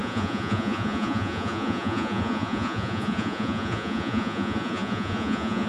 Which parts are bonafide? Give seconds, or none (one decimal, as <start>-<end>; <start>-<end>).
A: none